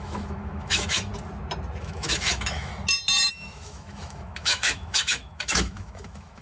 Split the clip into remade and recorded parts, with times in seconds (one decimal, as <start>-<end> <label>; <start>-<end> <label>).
0.0-1.1 remade; 1.1-1.8 recorded; 1.8-2.7 remade; 2.7-3.3 recorded; 3.3-6.4 remade

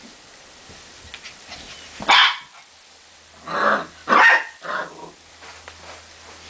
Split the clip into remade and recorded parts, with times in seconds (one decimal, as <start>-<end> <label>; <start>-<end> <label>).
0.0-6.5 recorded

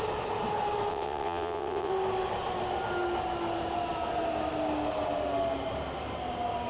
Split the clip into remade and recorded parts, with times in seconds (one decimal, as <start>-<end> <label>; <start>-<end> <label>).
0.0-0.9 recorded; 0.9-1.9 remade; 1.9-6.7 recorded

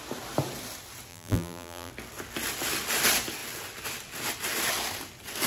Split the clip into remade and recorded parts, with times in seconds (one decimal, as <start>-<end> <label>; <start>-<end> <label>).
0.0-1.1 recorded; 1.1-1.9 remade; 1.9-5.5 recorded

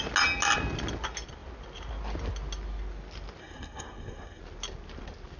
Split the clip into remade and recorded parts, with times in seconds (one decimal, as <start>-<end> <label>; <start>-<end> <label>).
0.0-3.4 recorded; 3.4-4.4 remade; 4.4-5.4 recorded

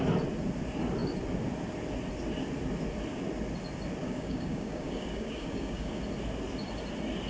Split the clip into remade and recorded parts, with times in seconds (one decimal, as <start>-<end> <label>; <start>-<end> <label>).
0.0-4.0 recorded; 4.0-6.0 remade; 6.0-7.3 recorded

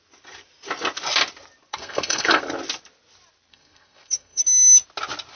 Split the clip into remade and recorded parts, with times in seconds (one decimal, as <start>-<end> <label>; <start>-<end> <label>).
0.0-1.7 recorded; 1.7-2.4 remade; 2.4-3.5 recorded; 3.5-4.4 remade; 4.4-5.4 recorded

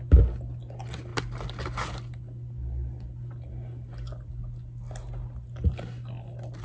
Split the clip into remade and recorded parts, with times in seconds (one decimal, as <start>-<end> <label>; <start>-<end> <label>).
0.0-6.6 recorded